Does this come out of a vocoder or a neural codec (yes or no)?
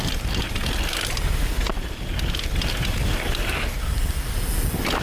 no